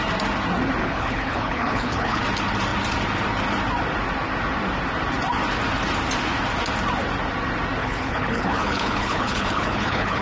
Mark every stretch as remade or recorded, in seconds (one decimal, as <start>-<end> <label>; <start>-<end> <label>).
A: 0.0-0.8 recorded; 0.8-2.2 remade; 2.2-7.8 recorded; 7.8-10.2 remade